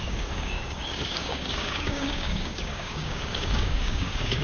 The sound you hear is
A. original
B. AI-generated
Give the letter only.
B